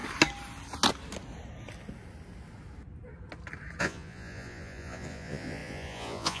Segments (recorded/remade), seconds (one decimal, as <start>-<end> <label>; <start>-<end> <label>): 0.0-3.8 recorded; 3.8-6.4 remade